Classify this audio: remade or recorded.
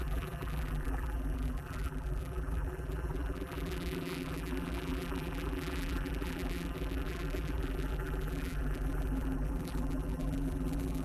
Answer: remade